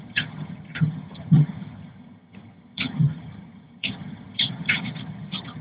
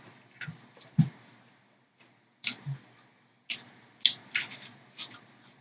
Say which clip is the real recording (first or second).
second